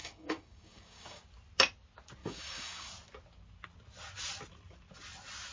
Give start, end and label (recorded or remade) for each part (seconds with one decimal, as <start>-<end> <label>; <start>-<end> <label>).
0.0-1.2 remade; 1.2-2.2 recorded; 2.2-2.9 remade; 2.9-5.5 recorded

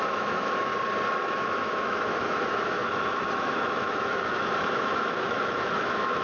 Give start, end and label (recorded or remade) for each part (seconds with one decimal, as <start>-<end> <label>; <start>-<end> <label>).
0.0-0.7 remade; 0.7-1.2 recorded; 1.2-6.2 remade

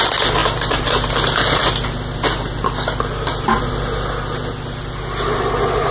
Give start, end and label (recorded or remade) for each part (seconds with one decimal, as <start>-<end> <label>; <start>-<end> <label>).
0.0-5.9 recorded

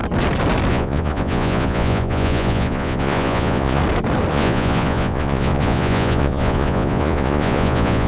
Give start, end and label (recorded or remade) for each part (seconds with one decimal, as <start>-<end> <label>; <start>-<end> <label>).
0.0-0.7 recorded; 0.7-3.8 remade; 3.8-4.3 recorded; 4.3-8.1 remade